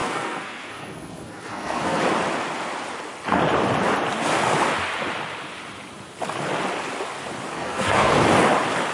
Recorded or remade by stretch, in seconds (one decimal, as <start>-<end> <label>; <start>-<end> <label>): 0.0-2.0 remade; 2.0-7.5 recorded; 7.5-8.1 remade; 8.1-8.9 recorded